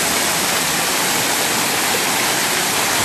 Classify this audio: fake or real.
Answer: real